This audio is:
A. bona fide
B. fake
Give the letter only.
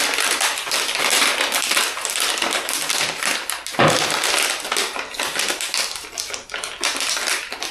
A